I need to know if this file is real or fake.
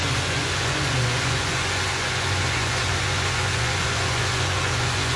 fake